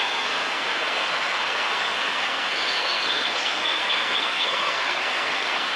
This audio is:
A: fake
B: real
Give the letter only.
A